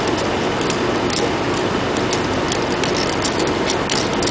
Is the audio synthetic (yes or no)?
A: no